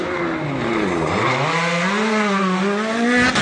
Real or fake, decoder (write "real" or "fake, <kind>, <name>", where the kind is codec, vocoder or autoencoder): real